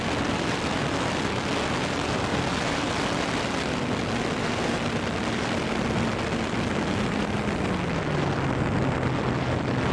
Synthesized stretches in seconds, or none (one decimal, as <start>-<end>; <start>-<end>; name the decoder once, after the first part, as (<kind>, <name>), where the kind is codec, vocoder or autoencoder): none